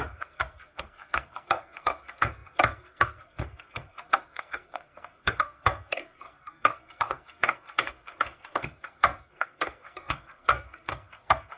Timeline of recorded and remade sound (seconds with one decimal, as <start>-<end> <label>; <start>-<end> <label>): 0.0-11.6 remade